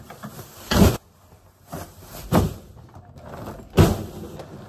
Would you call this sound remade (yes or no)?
no